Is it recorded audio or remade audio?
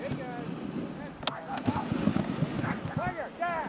recorded